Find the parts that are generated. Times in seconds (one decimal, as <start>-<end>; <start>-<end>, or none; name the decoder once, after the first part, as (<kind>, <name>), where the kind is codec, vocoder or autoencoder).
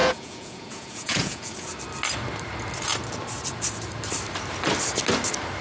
0.0-1.8 (vocoder, Vocos)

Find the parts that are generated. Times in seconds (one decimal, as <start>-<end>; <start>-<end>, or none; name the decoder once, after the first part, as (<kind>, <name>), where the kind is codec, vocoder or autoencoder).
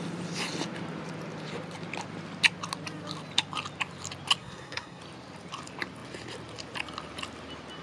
4.4-5.0 (codec, SNAC)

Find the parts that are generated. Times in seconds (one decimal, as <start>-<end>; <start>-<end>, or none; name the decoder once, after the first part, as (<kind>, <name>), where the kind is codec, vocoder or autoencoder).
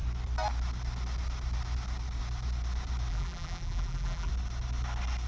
3.1-4.3 (vocoder, BigVGAN v2)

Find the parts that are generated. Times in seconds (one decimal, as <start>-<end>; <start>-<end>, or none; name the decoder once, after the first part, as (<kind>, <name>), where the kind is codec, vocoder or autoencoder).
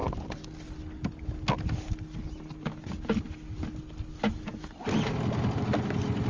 none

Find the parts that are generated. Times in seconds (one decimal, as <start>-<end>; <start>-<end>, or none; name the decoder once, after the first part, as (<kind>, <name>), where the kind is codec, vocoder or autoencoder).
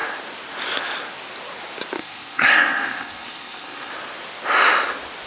2.0-3.9 (codec, SNAC)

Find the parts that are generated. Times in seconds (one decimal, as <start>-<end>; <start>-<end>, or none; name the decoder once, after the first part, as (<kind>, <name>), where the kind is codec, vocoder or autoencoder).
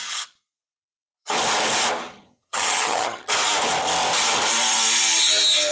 2.1-3.3 (vocoder, HiFi-GAN)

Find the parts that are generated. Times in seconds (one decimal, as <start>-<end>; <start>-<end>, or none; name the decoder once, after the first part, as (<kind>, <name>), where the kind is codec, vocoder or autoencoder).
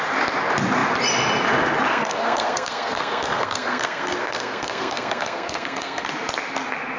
1.9-6.1 (codec, SNAC)